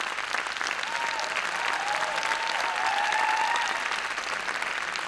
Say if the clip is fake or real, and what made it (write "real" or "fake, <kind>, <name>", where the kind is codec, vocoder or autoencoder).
real